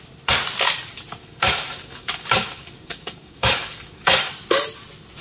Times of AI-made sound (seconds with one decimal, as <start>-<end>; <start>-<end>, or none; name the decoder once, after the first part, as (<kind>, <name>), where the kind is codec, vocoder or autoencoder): 1.2-4.3 (codec, DAC)